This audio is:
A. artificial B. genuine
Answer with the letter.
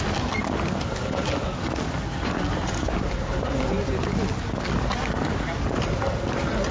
B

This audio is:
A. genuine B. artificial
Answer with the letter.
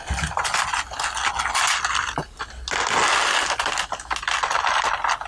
A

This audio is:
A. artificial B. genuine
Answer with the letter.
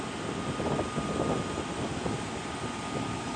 B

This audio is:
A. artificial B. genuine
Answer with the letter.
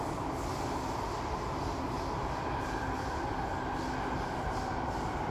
B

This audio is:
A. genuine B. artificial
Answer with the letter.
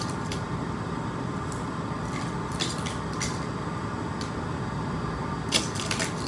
A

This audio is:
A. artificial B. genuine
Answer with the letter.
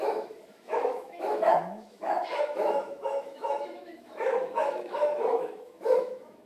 A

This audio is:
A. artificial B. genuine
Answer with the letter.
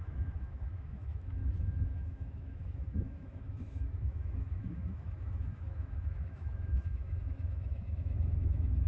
A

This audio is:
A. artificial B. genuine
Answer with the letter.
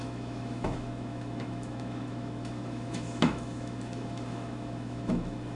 A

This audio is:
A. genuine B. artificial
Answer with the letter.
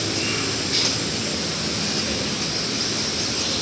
A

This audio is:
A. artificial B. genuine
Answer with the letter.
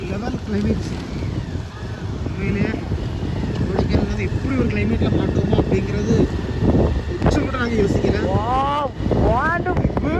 B